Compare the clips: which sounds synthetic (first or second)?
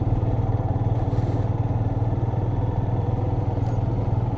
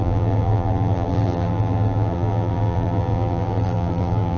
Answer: second